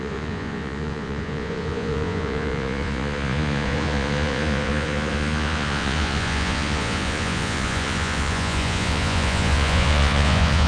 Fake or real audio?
fake